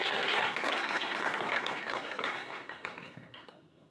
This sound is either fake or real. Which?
fake